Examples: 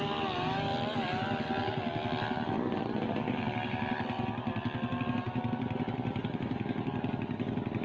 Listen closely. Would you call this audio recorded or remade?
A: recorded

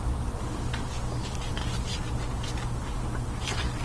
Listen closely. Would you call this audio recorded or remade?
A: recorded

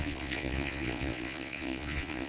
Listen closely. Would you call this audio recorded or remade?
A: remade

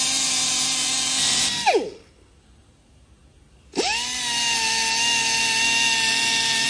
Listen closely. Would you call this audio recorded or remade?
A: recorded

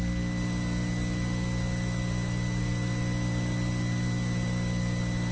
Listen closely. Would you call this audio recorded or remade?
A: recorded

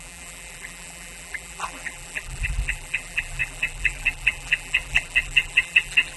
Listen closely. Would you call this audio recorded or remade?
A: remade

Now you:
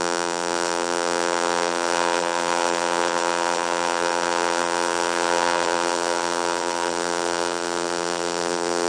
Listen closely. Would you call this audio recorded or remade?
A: remade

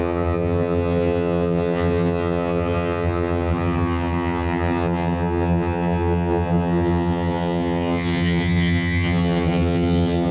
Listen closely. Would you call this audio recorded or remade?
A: remade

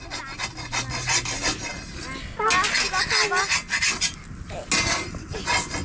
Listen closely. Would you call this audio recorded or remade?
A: recorded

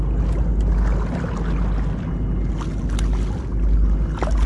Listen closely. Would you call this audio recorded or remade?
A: recorded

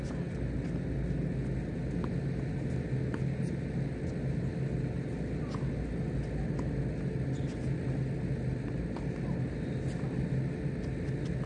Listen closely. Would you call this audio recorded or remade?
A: recorded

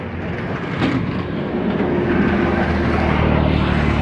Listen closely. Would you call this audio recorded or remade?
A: recorded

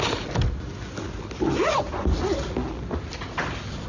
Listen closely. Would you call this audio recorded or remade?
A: recorded